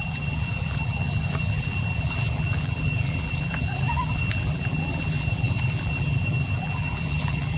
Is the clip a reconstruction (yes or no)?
yes